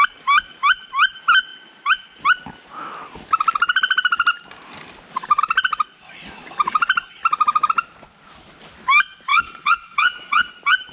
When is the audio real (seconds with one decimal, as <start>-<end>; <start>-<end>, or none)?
0.0-9.3; 10.5-10.9